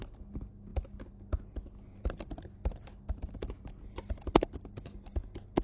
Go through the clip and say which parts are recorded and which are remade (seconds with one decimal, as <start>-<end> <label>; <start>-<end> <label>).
0.0-5.6 recorded